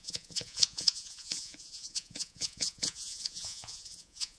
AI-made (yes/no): yes